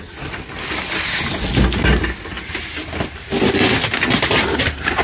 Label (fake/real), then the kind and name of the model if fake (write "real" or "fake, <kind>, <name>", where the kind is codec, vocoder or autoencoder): real